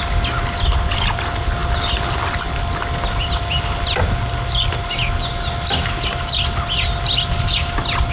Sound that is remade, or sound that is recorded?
recorded